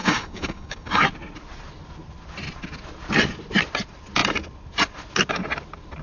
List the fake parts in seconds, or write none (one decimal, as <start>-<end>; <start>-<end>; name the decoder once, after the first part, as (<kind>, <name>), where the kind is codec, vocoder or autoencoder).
0.0-1.0 (codec, DAC)